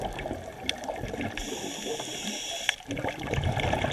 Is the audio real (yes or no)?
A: yes